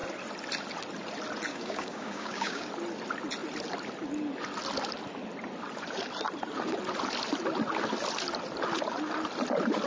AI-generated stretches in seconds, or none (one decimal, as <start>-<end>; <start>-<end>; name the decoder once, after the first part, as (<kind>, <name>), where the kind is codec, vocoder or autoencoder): 1.5-2.7 (codec, DAC)